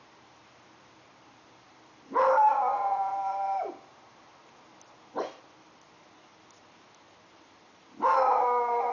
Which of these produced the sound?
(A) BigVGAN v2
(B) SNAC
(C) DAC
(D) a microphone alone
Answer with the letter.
D